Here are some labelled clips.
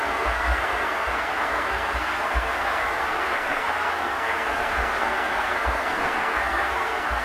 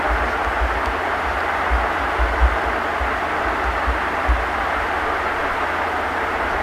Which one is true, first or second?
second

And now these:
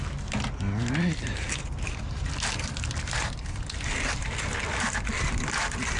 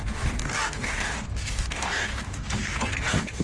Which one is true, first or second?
first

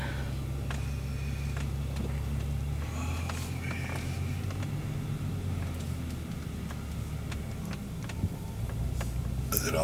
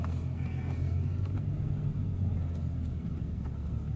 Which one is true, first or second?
first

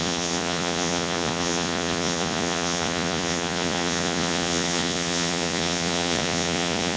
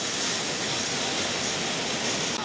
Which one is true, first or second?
second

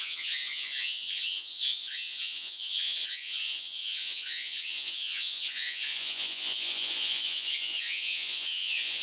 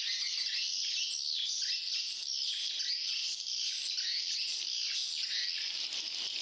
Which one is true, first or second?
second